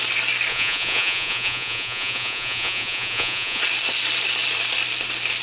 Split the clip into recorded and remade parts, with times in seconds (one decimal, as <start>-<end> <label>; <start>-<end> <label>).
0.0-0.5 recorded; 0.5-3.6 remade; 3.6-5.4 recorded